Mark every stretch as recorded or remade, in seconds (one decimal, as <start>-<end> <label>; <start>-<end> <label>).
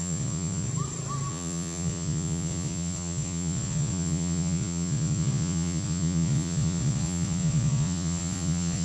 0.0-0.7 remade; 0.7-1.3 recorded; 1.3-8.8 remade